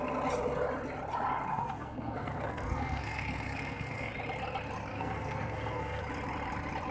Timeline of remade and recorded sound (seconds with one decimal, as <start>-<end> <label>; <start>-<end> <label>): 0.0-1.5 recorded; 1.5-4.1 remade; 4.1-4.9 recorded; 4.9-6.0 remade; 6.0-6.9 recorded